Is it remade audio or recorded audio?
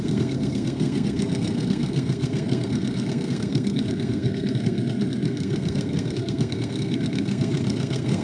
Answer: remade